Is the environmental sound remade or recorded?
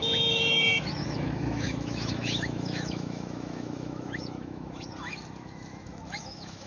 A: remade